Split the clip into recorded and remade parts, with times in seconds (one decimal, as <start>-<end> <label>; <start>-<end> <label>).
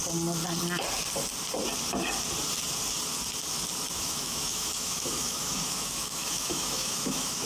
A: 0.0-3.9 recorded; 3.9-7.5 remade